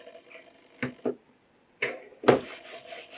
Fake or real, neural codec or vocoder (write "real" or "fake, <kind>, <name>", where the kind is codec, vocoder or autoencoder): real